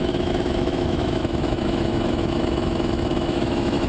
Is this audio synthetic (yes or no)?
yes